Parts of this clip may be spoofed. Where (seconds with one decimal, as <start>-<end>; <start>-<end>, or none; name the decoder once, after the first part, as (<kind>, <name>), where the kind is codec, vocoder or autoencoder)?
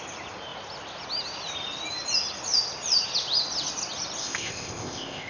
4.2-5.3 (codec, ZipCodec)